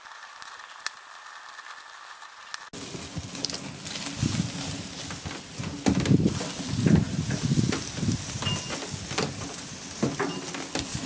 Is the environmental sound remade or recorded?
recorded